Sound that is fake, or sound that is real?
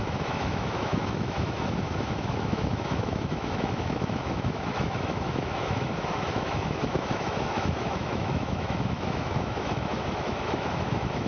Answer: fake